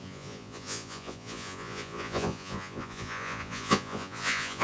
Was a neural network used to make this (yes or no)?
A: yes